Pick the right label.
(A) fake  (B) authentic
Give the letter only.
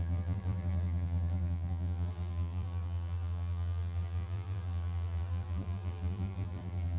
A